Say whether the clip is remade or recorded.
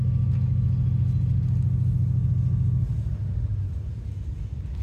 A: recorded